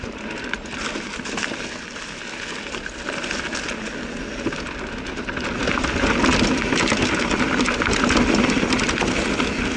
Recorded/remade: recorded